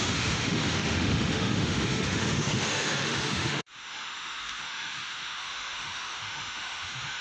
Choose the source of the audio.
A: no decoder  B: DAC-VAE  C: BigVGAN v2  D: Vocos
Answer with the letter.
B